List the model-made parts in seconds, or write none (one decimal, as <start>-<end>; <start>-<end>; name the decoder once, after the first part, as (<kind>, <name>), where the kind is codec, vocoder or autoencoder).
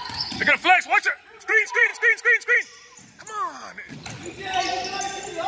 0.0-1.9 (vocoder, Vocos)